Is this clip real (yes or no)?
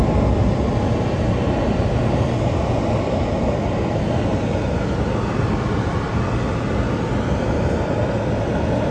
yes